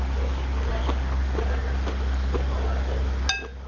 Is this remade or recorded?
recorded